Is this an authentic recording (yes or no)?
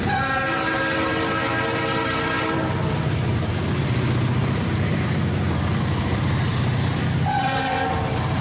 no